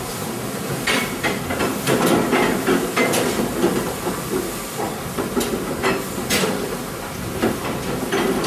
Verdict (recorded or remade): recorded